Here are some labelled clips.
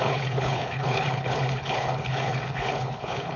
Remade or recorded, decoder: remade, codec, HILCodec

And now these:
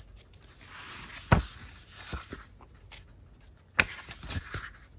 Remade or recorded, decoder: recorded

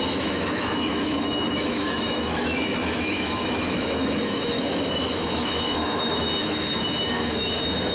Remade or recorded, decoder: remade, autoencoder, DAC-VAE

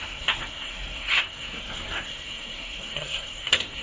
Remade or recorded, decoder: remade, codec, SNAC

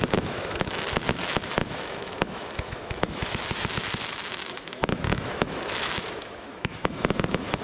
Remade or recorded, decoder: remade, autoencoder, DAC-VAE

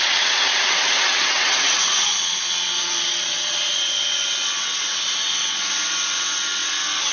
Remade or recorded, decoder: remade, vocoder, WaveNeXt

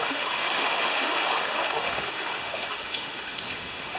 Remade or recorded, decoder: remade, autoencoder, DAC-VAE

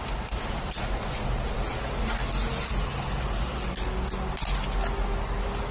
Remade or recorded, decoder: recorded